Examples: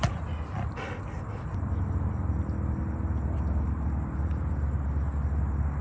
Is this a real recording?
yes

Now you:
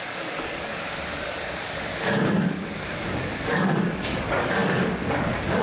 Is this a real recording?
no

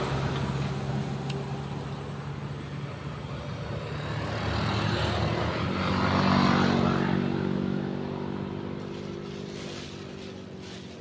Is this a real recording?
yes